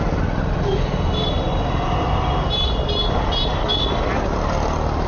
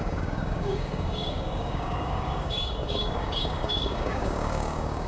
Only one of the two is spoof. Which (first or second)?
second